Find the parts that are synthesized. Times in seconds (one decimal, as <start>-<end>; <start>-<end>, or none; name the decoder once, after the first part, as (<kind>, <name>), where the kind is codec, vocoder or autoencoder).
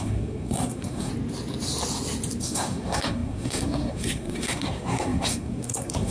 0.0-1.1 (codec, SNAC); 2.4-6.1